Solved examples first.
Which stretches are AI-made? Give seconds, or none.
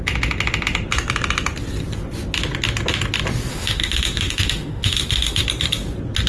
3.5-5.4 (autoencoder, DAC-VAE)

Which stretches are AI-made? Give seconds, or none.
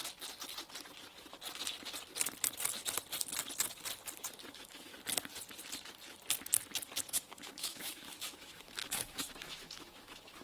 4.5-4.9 (autoencoder, DAC-VAE); 7.1-10.4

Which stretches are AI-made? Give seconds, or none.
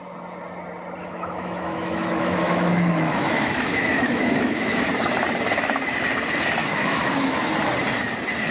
1.0-4.9 (autoencoder, DAC-VAE); 6.6-7.5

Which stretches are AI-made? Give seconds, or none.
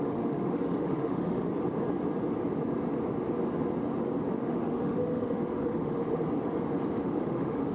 0.0-1.5 (autoencoder, DAC-VAE); 4.3-6.2; 7.0-7.7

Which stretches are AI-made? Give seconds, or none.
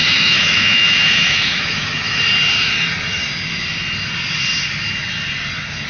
0.0-2.2 (autoencoder, DAC-VAE)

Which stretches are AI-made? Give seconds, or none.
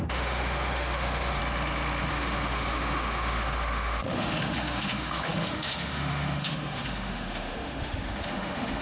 0.0-1.4 (autoencoder, DAC-VAE); 2.1-8.8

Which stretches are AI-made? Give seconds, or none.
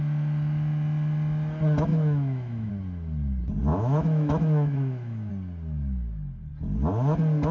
1.9-2.7 (autoencoder, DAC-VAE); 3.7-5.3